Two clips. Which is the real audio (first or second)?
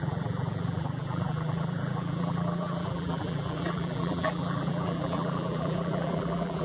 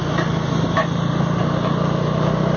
second